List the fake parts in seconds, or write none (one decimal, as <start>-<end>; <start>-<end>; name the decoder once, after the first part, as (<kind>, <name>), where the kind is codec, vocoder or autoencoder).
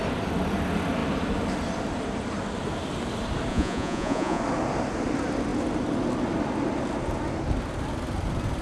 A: 3.5-4.4 (vocoder, Vocos)